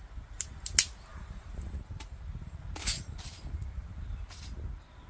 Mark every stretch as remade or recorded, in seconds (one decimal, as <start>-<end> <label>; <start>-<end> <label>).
0.0-5.1 recorded